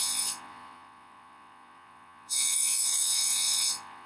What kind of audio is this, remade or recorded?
remade